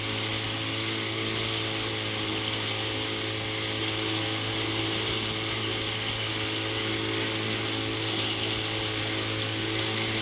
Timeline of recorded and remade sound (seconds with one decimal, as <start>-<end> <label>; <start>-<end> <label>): 0.0-10.2 recorded